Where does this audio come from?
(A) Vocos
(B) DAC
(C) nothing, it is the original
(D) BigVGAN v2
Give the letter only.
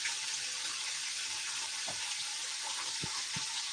C